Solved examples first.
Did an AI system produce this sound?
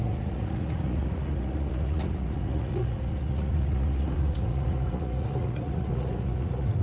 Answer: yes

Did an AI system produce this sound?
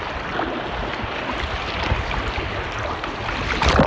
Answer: no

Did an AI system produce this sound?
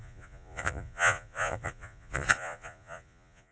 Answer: yes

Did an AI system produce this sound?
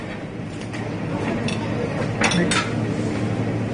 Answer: no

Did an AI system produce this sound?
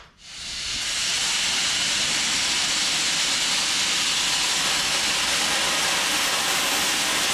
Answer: no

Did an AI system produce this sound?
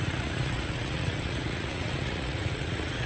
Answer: yes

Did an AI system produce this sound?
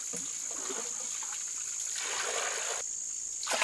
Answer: no